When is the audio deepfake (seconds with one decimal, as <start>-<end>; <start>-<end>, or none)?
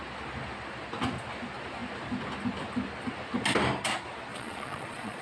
4.3-5.2